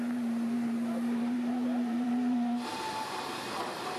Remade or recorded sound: remade